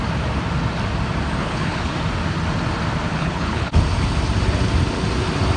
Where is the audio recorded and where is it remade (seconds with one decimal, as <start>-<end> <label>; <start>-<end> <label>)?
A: 0.0-1.4 recorded; 1.4-1.9 remade; 1.9-3.1 recorded; 3.1-3.8 remade; 3.8-5.6 recorded